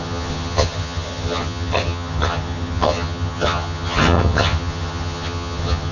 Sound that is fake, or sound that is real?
fake